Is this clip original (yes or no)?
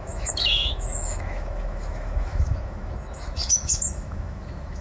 no